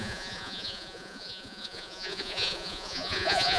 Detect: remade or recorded remade